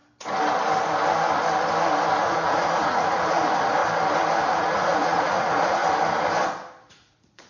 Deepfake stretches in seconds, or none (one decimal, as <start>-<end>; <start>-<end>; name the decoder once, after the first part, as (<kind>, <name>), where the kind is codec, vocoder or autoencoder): 2.2-3.8 (vocoder, Vocos); 4.5-5.8; 6.9-7.5